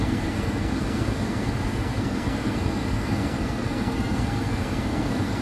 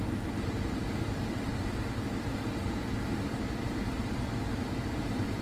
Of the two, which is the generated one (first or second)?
first